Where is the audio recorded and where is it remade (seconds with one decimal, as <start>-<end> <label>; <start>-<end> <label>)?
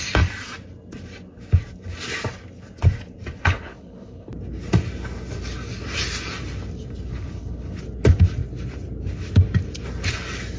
0.0-3.4 recorded; 3.4-4.3 remade; 4.3-7.1 recorded; 7.1-7.8 remade; 7.8-10.6 recorded